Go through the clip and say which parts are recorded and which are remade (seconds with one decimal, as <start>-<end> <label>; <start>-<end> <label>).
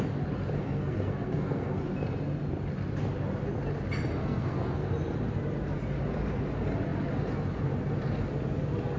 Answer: 0.0-0.6 recorded; 0.6-1.8 remade; 1.8-4.2 recorded; 4.2-4.9 remade; 4.9-9.0 recorded